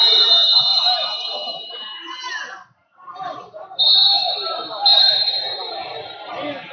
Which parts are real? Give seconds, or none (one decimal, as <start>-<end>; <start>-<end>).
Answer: 0.0-0.7; 2.3-2.8; 4.2-4.9; 6.3-6.7